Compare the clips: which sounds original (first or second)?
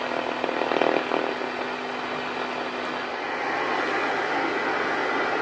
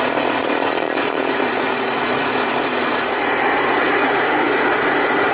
first